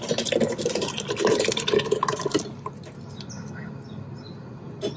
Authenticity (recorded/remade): recorded